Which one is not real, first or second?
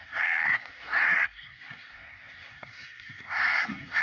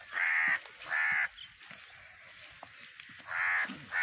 first